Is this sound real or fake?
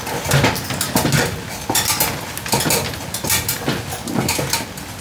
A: real